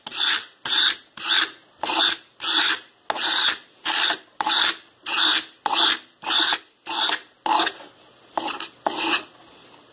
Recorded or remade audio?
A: recorded